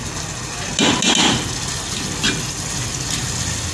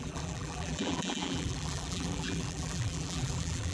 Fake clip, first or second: second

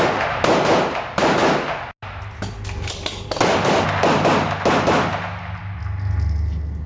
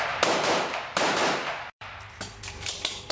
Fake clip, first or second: second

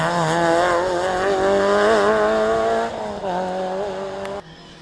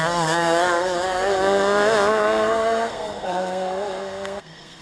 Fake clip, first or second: second